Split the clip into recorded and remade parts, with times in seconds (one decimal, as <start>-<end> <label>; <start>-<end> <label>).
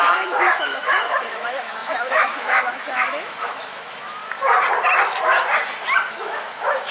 0.0-4.2 remade; 4.2-6.1 recorded; 6.1-6.9 remade